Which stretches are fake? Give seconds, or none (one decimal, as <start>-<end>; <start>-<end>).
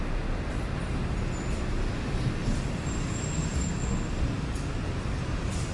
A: 2.4-3.2